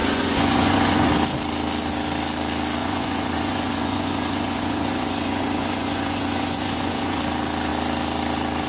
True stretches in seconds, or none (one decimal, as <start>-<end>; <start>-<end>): 1.1-2.8; 7.2-8.7